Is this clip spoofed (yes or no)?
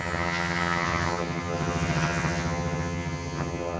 yes